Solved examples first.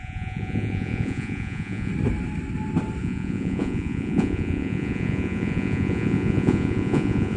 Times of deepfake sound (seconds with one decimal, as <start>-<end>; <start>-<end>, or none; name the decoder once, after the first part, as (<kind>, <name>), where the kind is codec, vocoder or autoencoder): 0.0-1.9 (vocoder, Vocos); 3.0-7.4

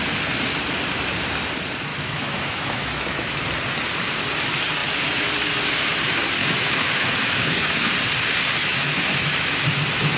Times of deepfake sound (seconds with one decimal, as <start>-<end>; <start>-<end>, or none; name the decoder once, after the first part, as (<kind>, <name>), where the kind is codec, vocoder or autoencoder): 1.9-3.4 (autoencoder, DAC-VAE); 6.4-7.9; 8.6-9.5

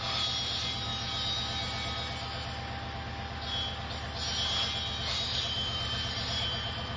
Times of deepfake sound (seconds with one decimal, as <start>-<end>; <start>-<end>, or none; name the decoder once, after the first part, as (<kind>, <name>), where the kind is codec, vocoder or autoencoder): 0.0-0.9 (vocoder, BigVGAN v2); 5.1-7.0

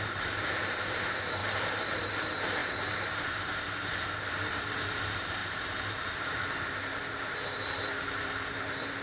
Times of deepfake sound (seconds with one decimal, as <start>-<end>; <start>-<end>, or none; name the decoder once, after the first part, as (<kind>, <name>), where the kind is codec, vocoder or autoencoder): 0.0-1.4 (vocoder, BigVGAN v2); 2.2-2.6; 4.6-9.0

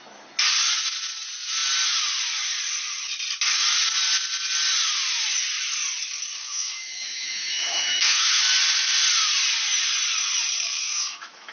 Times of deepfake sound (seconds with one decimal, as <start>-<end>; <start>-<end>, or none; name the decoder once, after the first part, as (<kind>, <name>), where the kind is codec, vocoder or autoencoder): 6.4-8.4 (autoencoder, DAC-VAE); 10.8-11.5

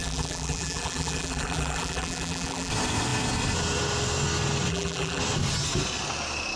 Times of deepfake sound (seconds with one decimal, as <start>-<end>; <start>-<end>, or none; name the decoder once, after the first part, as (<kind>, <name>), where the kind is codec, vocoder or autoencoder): 0.0-2.7 (vocoder, BigVGAN v2); 4.7-5.2